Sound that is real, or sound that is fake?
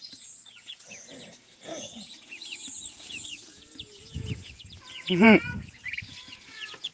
fake